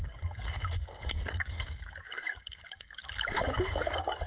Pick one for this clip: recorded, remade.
remade